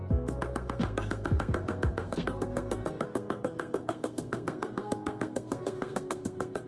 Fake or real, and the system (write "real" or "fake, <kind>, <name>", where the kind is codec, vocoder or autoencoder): fake, codec, SNAC